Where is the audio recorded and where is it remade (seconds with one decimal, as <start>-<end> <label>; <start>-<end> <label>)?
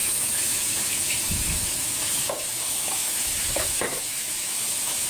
0.0-5.1 remade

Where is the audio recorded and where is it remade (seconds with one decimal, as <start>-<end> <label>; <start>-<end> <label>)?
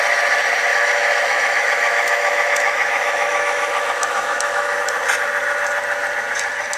0.0-0.7 recorded; 0.7-4.8 remade; 4.8-6.8 recorded